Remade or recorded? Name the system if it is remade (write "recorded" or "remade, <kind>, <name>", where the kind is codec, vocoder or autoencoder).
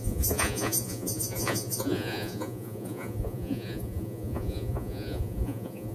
remade, vocoder, Vocos